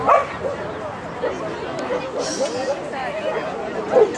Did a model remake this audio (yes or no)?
no